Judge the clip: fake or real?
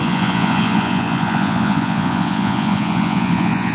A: fake